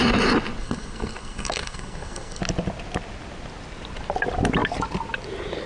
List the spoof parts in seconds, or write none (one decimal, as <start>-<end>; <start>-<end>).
0.6-2.4